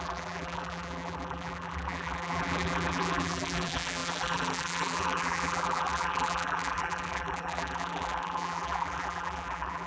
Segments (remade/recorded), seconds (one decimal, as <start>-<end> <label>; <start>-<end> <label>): 0.0-9.9 remade